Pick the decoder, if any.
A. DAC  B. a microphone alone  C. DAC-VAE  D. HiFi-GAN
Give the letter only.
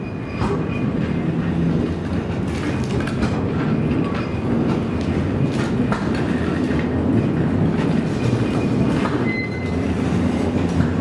B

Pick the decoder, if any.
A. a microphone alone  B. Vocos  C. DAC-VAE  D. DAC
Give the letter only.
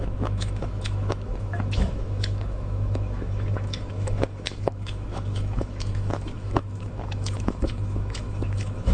C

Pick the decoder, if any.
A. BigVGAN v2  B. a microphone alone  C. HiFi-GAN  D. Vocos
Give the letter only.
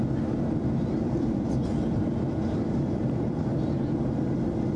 A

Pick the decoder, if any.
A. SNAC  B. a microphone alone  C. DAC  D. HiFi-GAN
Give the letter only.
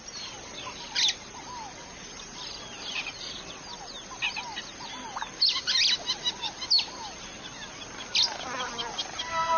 B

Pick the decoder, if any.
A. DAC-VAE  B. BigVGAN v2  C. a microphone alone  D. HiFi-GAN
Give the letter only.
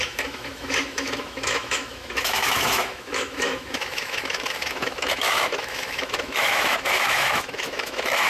A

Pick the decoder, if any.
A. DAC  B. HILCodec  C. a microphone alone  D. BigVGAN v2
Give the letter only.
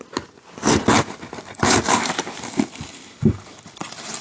C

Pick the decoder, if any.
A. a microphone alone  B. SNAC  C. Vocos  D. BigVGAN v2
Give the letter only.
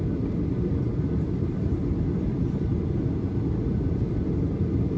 D